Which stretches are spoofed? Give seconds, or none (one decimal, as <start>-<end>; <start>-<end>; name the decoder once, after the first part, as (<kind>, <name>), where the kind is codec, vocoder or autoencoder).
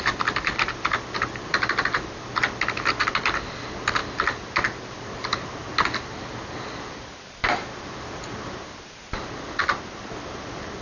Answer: 7.4-8.9 (vocoder, BigVGAN v2)